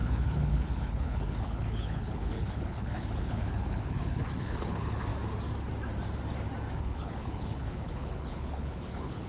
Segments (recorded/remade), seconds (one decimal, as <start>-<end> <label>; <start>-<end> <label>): 0.0-5.1 remade; 5.1-6.8 recorded; 6.8-9.3 remade